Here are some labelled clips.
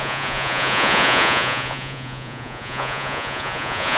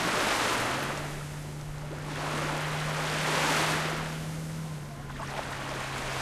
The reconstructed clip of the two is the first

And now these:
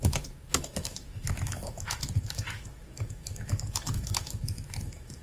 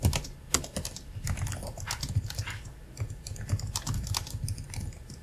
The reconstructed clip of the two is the first